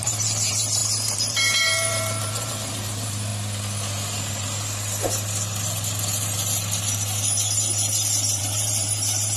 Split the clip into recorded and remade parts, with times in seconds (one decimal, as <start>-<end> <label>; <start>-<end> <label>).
0.0-3.3 remade; 3.3-8.4 recorded; 8.4-9.4 remade